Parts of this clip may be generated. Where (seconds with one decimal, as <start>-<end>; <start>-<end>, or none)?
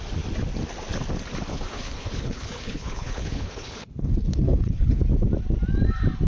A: 1.5-5.0